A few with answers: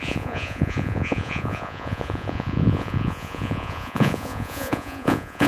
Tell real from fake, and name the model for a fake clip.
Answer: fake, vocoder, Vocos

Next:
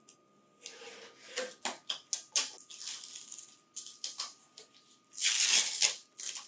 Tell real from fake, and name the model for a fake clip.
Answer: real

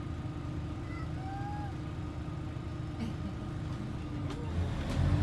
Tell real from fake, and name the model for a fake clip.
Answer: real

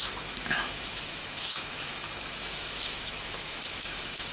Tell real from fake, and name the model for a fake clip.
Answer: fake, autoencoder, DAC-VAE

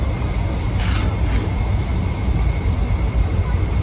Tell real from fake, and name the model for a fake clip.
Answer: real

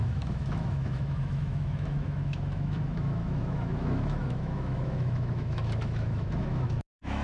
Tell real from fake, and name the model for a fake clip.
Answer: fake, autoencoder, DAC-VAE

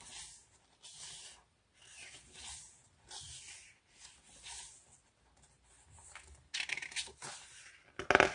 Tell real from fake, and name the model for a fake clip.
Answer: real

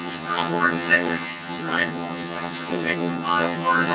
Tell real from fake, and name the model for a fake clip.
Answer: fake, vocoder, HiFi-GAN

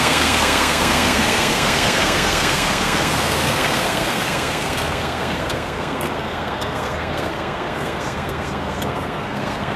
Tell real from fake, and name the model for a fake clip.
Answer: fake, codec, SNAC